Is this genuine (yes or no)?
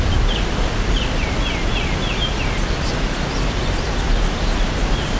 yes